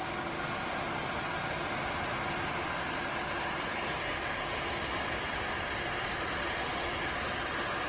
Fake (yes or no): no